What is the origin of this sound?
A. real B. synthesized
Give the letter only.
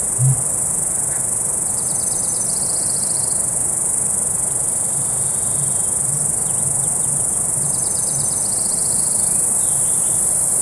A